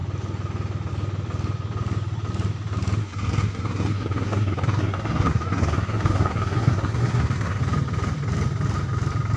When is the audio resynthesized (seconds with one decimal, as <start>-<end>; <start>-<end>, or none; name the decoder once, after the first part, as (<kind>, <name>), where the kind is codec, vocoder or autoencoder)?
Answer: 3.0-7.6 (codec, SNAC)